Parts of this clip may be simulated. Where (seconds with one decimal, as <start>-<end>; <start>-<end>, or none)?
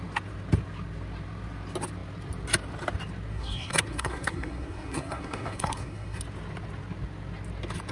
3.3-6.2